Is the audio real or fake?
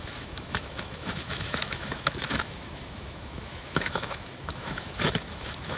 fake